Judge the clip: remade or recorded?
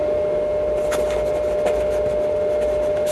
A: recorded